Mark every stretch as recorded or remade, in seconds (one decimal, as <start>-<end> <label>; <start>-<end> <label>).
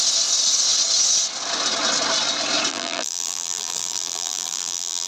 0.0-2.7 recorded; 2.7-5.1 remade